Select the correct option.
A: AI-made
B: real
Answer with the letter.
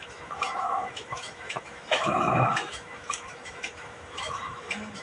A